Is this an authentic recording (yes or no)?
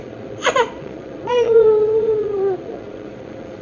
no